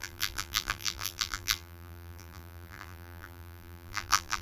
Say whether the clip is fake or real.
fake